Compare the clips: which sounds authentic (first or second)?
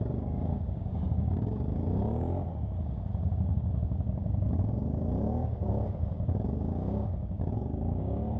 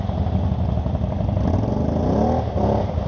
second